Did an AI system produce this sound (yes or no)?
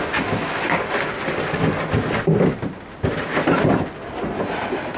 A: no